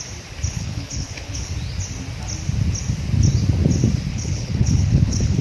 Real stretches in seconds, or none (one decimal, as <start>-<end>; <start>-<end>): 0.0-0.5; 1.5-4.1